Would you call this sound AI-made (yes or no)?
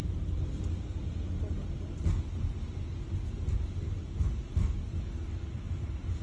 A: no